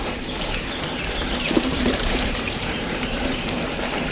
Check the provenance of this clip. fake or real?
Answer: fake